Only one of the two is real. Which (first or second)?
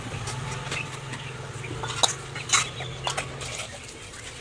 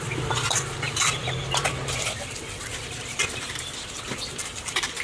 first